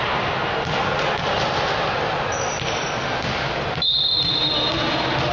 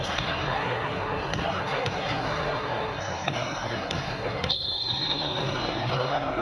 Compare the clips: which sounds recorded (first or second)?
first